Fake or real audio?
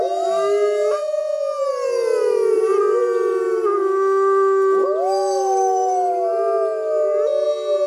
real